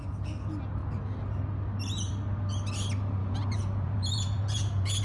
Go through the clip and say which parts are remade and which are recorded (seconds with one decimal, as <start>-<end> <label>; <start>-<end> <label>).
0.0-3.2 recorded; 3.2-5.0 remade